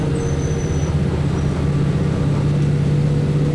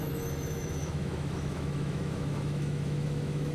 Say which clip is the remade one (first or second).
second